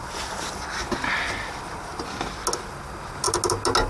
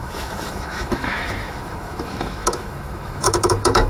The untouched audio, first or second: first